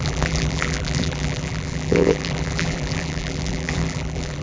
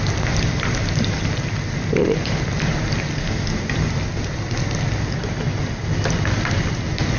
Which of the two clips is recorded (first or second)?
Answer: second